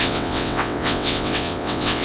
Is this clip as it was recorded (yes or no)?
no